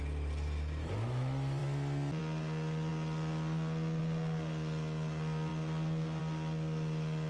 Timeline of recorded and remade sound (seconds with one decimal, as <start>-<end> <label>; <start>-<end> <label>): 0.0-7.3 recorded

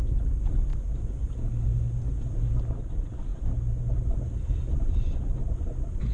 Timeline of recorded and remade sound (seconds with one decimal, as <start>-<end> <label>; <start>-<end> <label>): 0.0-5.4 recorded; 5.4-6.1 remade